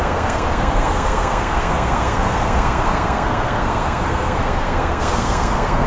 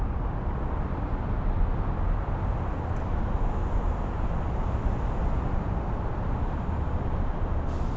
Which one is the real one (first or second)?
second